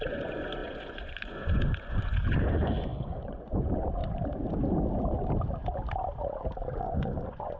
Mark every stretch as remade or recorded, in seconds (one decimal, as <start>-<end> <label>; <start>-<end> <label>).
0.0-4.0 remade; 4.0-6.8 recorded; 6.8-7.6 remade